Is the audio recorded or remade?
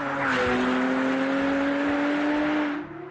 recorded